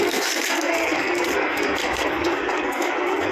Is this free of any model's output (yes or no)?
no